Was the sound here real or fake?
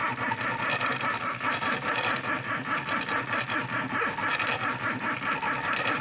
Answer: fake